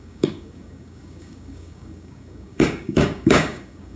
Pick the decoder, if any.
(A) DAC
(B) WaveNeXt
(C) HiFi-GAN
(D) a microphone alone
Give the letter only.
A